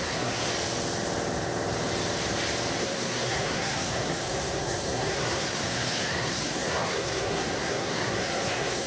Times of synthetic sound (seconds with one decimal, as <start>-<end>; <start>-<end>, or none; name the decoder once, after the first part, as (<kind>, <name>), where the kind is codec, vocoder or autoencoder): 0.0-0.5 (codec, SNAC); 2.8-8.9